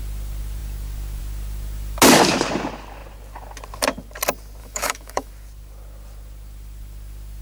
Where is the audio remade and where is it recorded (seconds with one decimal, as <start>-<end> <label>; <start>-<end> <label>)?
0.0-4.6 recorded; 4.6-5.3 remade; 5.3-7.4 recorded